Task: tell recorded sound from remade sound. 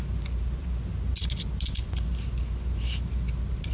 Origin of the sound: recorded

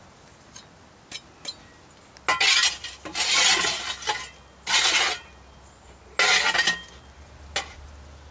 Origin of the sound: recorded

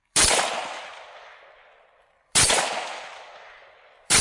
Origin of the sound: remade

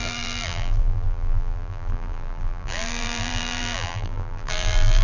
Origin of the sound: remade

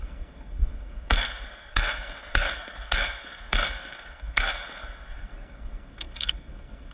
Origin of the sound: remade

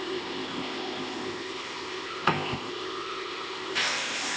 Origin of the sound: remade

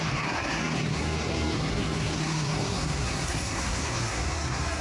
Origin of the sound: remade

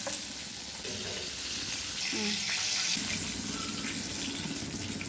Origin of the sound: recorded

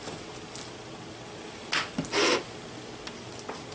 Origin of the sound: recorded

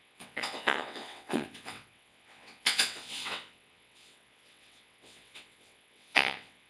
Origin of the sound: remade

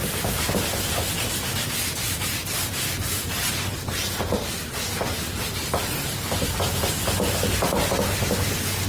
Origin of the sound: recorded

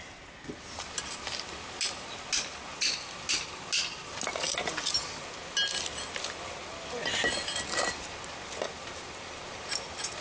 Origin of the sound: recorded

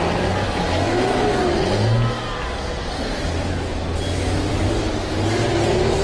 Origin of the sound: recorded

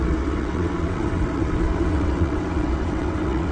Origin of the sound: remade